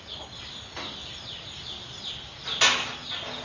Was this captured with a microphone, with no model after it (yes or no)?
yes